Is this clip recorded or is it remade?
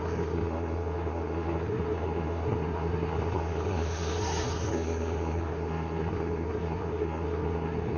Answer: remade